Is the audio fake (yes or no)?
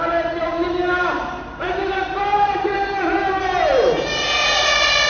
yes